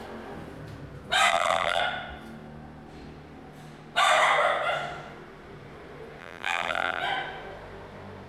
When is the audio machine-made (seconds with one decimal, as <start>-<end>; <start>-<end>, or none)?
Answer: 1.3-1.8; 6.2-7.0